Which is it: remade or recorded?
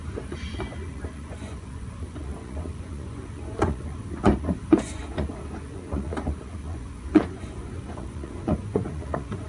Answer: remade